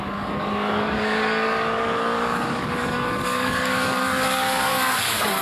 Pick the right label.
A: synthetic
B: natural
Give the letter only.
A